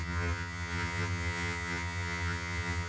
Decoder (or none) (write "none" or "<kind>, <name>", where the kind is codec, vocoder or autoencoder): vocoder, HiFi-GAN